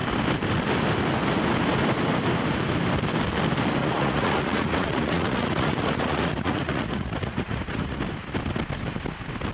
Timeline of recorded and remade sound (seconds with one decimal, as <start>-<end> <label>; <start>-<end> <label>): 0.0-3.8 recorded; 3.8-8.0 remade; 8.0-9.5 recorded